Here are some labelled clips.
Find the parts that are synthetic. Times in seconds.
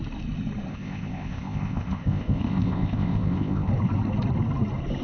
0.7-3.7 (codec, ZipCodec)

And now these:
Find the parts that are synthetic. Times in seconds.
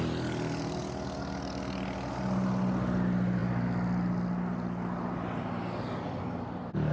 none